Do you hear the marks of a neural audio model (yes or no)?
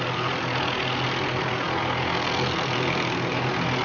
no